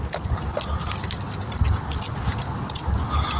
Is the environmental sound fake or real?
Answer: real